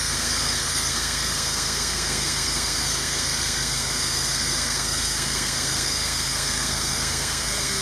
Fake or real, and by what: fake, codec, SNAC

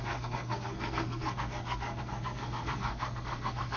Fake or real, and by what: fake, codec, SNAC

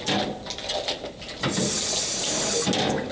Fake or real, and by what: real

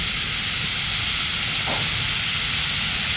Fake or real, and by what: real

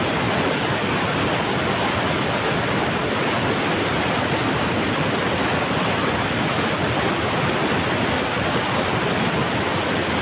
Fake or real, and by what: real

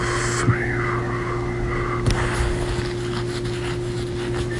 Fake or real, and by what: real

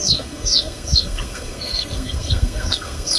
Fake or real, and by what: fake, codec, SNAC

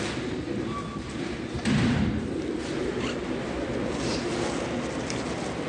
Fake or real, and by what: real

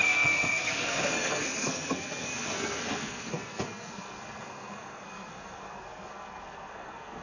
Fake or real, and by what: fake, codec, SNAC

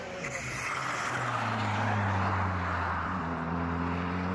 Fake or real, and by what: real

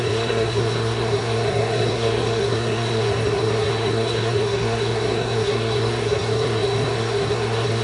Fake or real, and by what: fake, codec, SNAC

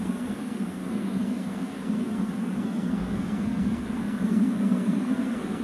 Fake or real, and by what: fake, codec, SNAC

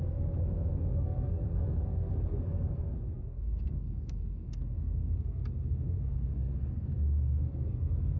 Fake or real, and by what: fake, codec, SNAC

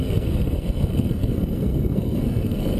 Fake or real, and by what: fake, codec, SNAC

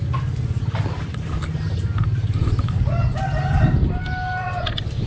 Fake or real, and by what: real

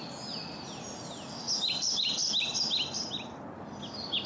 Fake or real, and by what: real